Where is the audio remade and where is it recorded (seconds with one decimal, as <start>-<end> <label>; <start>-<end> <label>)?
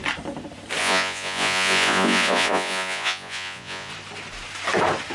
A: 0.0-0.8 recorded; 0.8-3.9 remade; 3.9-5.1 recorded